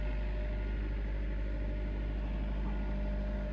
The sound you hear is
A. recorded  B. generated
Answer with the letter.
A